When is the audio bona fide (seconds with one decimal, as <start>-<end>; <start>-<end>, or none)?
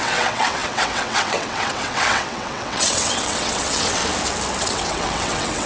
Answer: 4.0-4.6